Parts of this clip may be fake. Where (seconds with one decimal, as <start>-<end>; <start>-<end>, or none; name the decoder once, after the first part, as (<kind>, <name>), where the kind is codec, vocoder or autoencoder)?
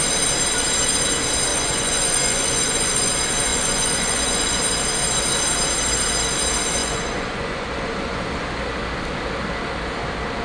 1.5-3.1 (vocoder, Vocos); 3.5-4.6; 6.8-8.6